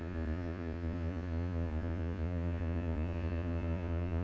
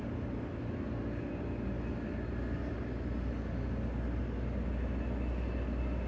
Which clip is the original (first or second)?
second